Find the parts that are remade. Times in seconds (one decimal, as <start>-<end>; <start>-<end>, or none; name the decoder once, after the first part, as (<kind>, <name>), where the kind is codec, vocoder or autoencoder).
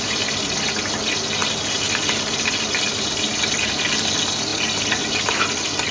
none